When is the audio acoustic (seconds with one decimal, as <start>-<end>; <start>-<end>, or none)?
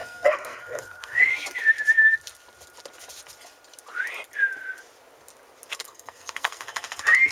1.3-5.7